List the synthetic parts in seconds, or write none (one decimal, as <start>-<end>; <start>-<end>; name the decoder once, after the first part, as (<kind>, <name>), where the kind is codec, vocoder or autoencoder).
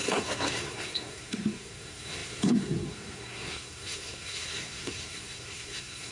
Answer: 0.0-6.1 (codec, SNAC)